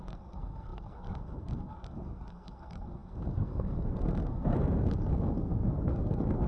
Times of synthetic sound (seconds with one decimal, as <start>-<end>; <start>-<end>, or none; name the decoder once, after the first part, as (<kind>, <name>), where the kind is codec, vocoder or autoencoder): 0.0-6.5 (codec, SNAC)